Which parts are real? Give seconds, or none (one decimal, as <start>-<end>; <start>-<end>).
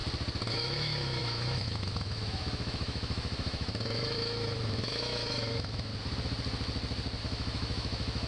0.0-0.5; 5.9-7.2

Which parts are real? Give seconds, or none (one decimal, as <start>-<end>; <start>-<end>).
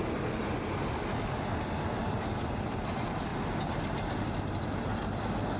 0.0-5.6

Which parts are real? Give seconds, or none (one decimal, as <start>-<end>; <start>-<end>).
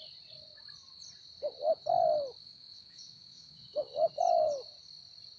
0.0-2.4; 4.1-5.4